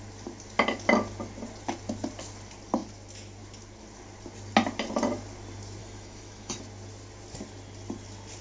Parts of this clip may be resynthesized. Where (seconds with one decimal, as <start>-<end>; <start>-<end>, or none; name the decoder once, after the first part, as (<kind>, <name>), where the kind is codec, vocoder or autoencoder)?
5.8-6.6 (autoencoder, DAC-VAE)